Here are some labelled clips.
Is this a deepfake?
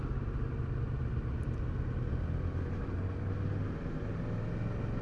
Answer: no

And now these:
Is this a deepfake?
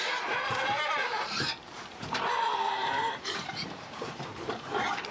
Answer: yes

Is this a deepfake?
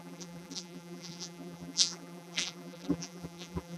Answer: yes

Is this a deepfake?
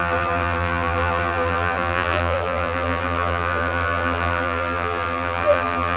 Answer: yes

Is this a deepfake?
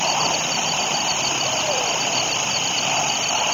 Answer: no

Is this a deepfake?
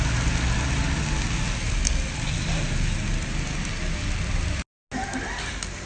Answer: no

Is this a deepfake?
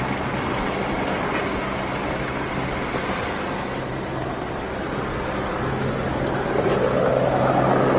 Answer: no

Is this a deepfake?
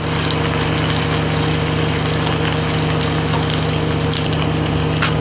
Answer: no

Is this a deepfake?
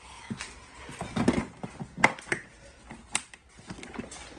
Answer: no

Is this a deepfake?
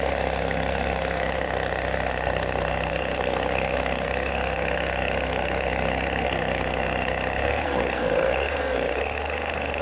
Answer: yes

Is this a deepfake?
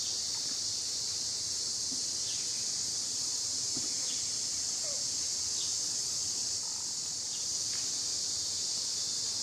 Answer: no